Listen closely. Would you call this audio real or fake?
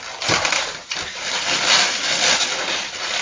fake